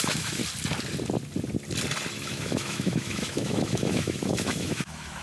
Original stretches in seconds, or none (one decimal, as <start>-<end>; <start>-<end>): 0.4-2.1